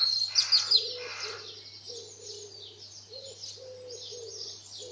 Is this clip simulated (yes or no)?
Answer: no